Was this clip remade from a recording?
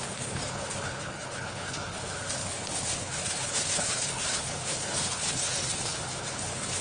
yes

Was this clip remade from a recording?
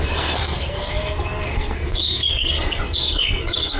yes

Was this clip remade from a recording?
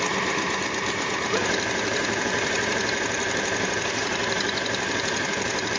yes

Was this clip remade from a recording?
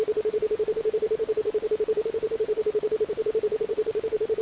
yes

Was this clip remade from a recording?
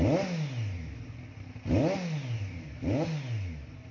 no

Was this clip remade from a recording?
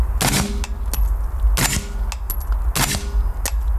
no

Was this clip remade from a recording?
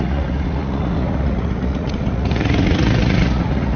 yes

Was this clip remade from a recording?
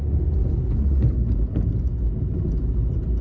no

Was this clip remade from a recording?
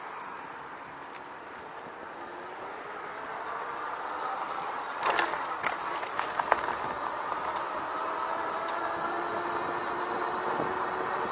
no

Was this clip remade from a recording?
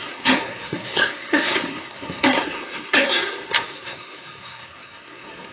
yes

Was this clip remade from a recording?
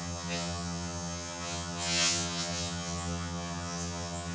yes